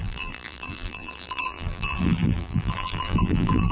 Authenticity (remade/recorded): remade